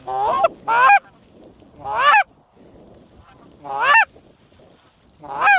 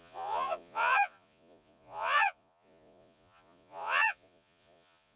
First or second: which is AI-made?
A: second